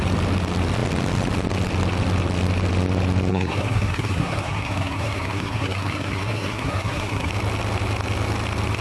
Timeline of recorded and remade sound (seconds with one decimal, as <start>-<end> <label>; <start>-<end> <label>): 0.0-3.3 recorded; 3.3-7.3 remade; 7.3-8.8 recorded